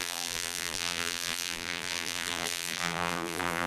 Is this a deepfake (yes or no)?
yes